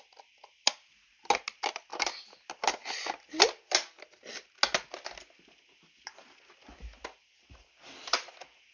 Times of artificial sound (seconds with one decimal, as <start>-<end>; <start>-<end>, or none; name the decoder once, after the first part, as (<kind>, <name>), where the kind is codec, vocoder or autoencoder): none